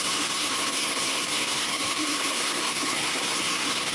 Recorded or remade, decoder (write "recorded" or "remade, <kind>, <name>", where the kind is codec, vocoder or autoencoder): remade, codec, SNAC